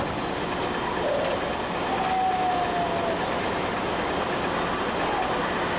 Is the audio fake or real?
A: real